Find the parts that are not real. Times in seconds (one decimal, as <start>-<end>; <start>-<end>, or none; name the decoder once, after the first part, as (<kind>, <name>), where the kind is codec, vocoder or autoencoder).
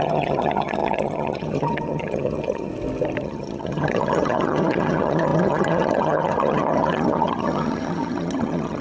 0.0-2.7 (vocoder, HiFi-GAN); 3.2-8.8